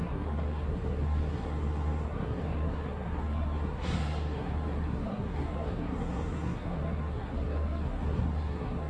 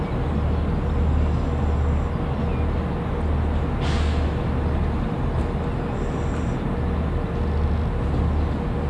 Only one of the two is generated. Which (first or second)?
first